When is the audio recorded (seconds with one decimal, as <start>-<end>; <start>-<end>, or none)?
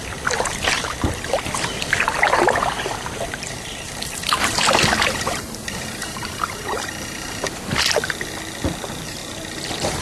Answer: 9.2-10.0